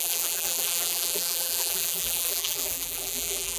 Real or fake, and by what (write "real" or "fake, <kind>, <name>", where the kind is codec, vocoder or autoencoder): fake, vocoder, BigVGAN v2